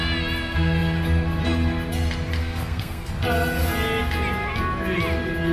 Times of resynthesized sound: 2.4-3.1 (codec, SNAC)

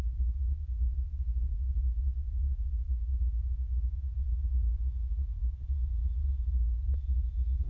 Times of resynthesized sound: none

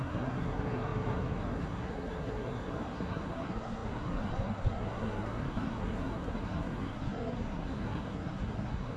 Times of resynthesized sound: 0.0-9.0 (codec, SNAC)

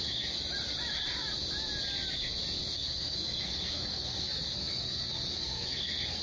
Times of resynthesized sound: 2.7-6.2 (codec, SNAC)

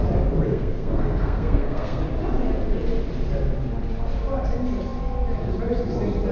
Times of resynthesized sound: 0.5-2.0 (codec, SNAC)

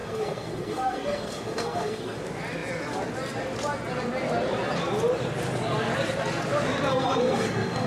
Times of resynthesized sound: 0.0-2.2 (codec, SNAC); 6.9-7.9

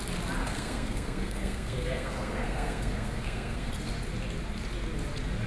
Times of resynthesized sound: 0.4-3.7 (codec, SNAC)